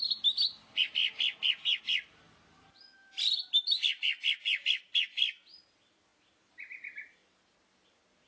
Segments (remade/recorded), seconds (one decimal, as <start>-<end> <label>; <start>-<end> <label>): 0.0-8.3 recorded